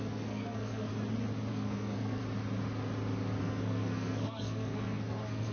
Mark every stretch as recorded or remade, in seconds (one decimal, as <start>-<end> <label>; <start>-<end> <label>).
0.0-0.9 remade; 0.9-1.5 recorded; 1.5-2.2 remade; 2.2-3.4 recorded; 3.4-5.5 remade